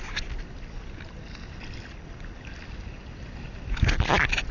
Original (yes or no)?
yes